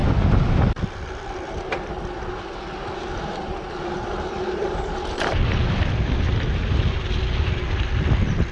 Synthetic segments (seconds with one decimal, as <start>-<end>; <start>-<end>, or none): 0.0-2.3; 2.8-5.9